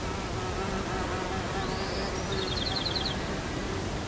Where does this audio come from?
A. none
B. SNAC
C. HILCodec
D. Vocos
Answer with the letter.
A